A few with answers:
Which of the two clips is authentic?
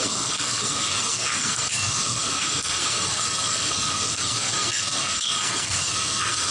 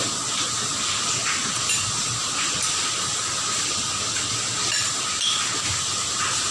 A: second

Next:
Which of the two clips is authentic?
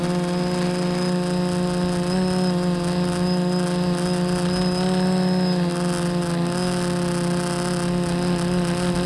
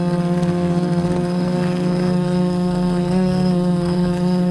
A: first